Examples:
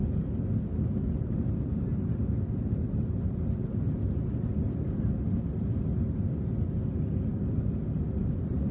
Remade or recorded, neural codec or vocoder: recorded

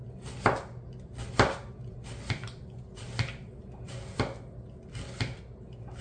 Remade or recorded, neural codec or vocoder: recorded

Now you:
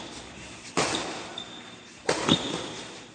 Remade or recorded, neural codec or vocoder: recorded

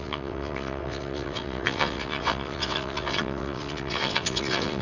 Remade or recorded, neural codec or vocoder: remade, vocoder, WaveNeXt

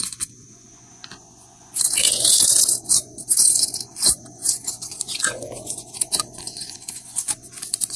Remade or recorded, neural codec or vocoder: remade, vocoder, Vocos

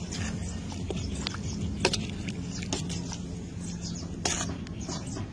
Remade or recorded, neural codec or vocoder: recorded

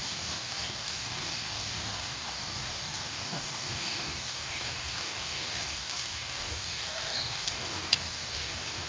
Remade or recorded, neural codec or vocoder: remade, codec, DAC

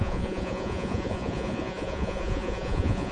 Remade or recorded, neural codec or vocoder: remade, vocoder, Vocos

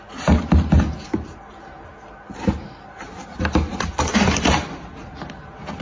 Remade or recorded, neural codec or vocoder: recorded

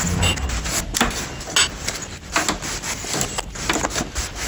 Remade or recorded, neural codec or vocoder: recorded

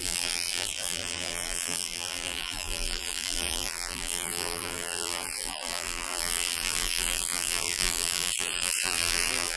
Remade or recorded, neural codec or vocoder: remade, vocoder, BigVGAN v2